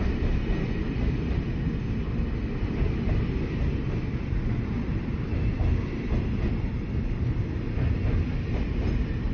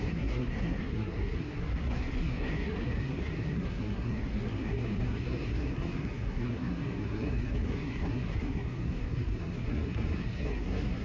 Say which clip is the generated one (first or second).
second